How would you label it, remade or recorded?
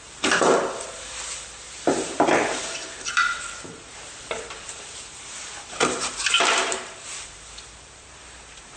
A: remade